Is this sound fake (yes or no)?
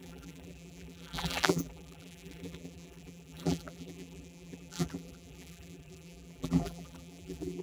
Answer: yes